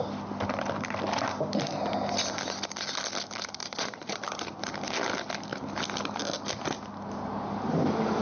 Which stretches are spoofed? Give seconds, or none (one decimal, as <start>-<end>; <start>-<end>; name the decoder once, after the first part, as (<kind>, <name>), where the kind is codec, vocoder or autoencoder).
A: 3.6-4.2 (vocoder, Vocos)